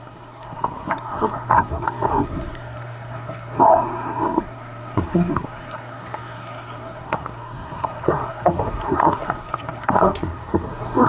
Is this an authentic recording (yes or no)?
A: no